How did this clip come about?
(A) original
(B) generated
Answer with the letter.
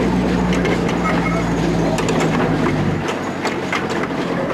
A